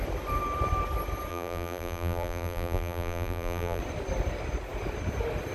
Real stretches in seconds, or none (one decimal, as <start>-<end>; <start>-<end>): 0.0-1.3; 3.8-5.5